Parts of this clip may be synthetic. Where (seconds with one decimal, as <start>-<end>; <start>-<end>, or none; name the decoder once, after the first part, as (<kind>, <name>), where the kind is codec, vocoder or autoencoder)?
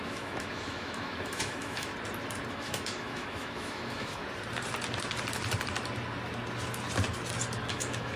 0.0-1.9 (autoencoder, DAC-VAE); 2.5-4.2; 7.7-8.2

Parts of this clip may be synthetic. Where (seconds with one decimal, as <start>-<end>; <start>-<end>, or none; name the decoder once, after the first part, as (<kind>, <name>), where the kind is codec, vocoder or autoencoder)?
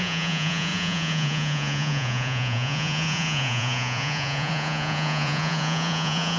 0.0-6.4 (vocoder, Vocos)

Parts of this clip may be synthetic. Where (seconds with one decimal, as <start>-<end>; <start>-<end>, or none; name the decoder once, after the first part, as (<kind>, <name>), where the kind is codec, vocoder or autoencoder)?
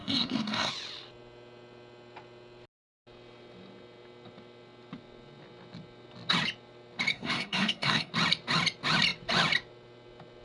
0.0-0.7 (codec, SNAC); 7.1-8.1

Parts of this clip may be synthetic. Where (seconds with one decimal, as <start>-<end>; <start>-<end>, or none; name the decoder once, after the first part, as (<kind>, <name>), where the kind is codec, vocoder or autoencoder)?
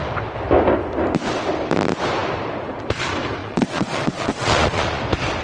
3.4-5.0 (vocoder, Vocos)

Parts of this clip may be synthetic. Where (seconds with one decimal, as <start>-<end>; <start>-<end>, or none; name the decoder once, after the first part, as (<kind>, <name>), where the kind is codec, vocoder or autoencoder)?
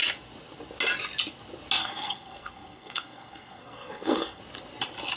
1.8-4.4 (codec, SNAC)